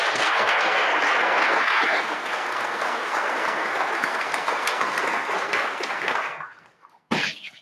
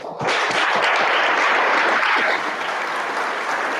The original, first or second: second